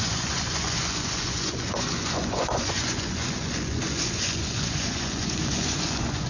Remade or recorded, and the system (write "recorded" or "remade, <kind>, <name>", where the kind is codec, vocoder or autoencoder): remade, vocoder, Vocos